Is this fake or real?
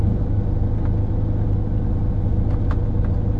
real